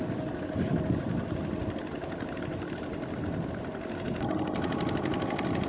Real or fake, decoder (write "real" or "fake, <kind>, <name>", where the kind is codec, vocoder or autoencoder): real